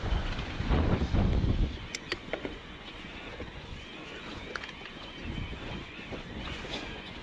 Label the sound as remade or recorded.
remade